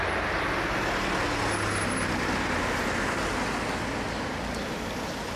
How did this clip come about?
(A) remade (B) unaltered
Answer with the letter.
B